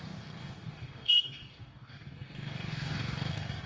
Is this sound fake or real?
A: fake